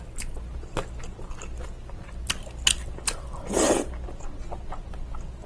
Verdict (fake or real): real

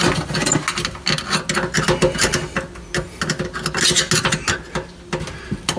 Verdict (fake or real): real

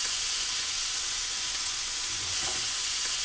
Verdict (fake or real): fake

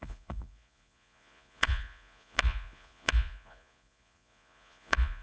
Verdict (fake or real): fake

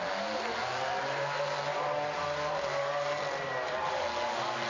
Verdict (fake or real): real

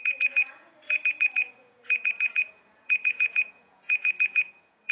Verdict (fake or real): fake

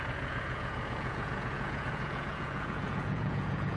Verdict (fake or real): fake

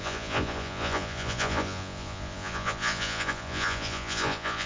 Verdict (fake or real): fake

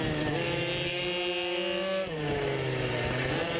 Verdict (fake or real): real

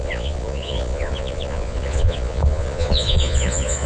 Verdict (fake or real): fake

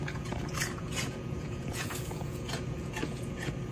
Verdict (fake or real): fake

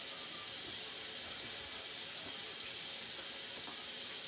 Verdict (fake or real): real